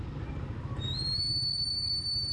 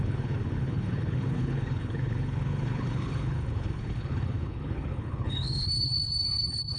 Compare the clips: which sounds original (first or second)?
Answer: first